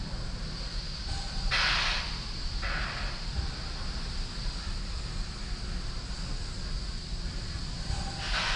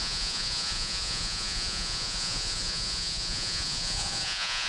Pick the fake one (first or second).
second